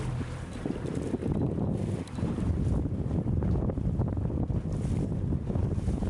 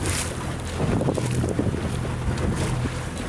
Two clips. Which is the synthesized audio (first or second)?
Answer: first